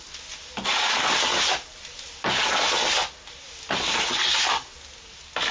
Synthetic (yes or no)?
no